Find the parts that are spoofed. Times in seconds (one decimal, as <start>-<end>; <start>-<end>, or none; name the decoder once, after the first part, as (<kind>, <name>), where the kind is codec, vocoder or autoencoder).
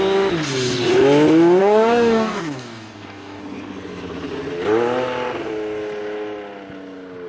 1.6-3.4 (codec, DAC)